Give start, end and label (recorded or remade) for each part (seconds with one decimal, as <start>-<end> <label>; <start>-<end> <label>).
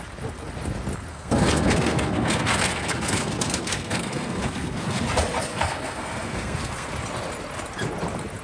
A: 0.0-1.1 recorded; 1.1-5.0 remade; 5.0-5.5 recorded; 5.5-6.9 remade; 6.9-8.4 recorded